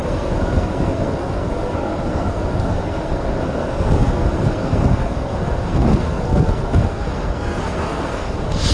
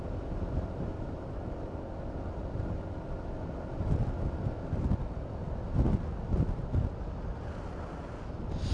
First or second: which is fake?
first